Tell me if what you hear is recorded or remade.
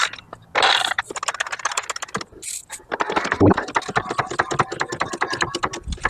recorded